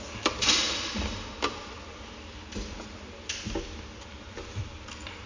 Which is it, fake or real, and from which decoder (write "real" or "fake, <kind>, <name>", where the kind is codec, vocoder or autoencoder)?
real